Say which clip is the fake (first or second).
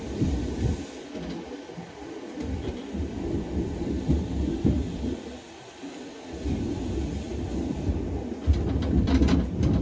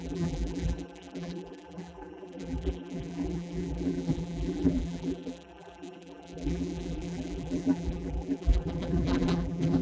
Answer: second